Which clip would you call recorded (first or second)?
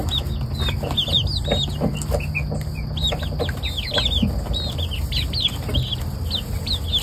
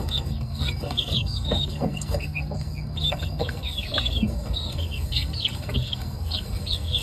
first